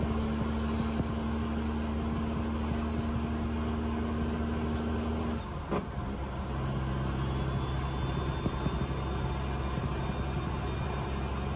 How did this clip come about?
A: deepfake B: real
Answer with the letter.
B